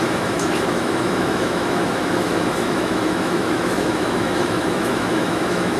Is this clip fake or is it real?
fake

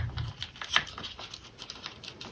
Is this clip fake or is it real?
real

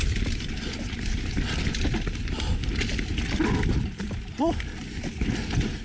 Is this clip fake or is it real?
real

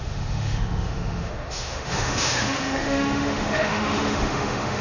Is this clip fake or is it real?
fake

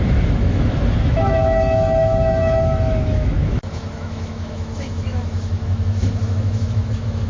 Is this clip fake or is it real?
fake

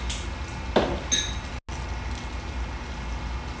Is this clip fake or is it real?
real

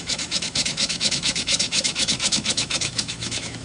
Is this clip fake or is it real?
fake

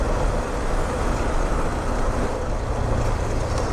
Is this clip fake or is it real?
real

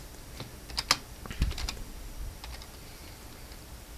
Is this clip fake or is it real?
real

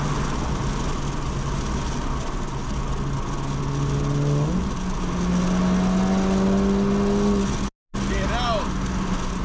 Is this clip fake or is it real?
real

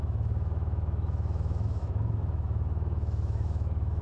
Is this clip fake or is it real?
fake